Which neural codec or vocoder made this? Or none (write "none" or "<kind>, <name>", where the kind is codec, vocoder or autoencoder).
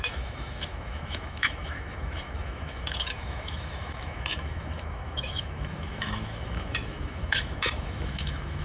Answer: autoencoder, DAC-VAE